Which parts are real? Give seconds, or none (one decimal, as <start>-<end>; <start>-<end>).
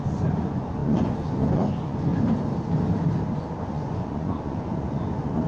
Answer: 2.1-3.6